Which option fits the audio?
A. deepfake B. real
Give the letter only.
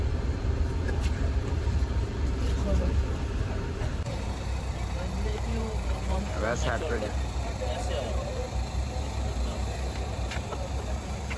A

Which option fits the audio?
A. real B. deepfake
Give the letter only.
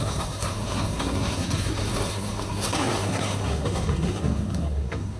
B